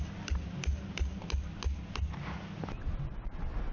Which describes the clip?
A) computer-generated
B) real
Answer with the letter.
B